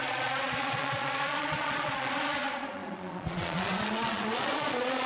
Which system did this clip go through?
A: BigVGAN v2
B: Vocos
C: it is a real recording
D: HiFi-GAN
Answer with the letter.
B